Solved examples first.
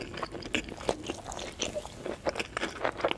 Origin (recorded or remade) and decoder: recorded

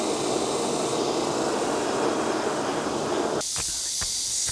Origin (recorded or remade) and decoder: recorded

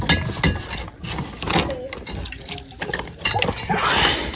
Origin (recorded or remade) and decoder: recorded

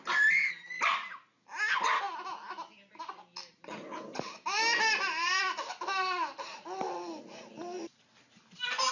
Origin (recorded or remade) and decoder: recorded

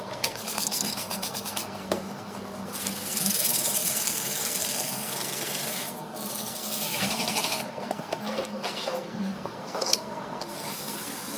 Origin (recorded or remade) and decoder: remade, codec, SNAC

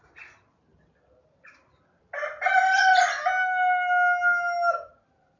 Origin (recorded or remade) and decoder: recorded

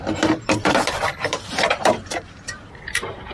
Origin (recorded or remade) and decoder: remade, vocoder, BigVGAN v2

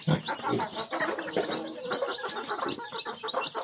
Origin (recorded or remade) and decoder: recorded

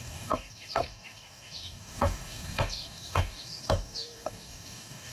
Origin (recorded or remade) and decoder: remade, codec, DAC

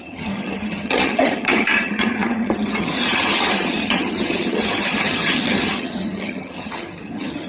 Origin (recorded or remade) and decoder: remade, vocoder, HiFi-GAN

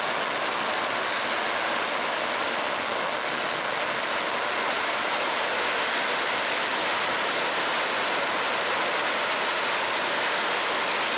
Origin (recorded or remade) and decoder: recorded